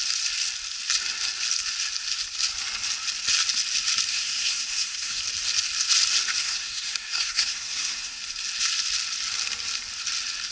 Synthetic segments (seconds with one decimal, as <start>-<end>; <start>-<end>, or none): 4.1-5.2; 6.4-8.2